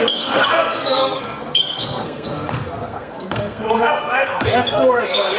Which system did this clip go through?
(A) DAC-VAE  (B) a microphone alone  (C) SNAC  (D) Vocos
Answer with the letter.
C